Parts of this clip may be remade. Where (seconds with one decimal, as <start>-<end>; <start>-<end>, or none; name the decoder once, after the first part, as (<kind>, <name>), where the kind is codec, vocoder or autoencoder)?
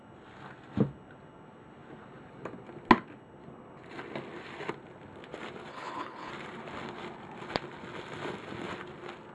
5.7-6.3 (codec, HILCodec)